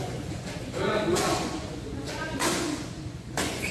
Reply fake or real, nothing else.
fake